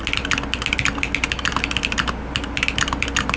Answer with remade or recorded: recorded